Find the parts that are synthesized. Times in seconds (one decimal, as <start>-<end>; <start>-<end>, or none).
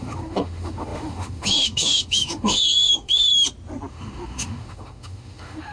0.0-3.3; 3.9-5.7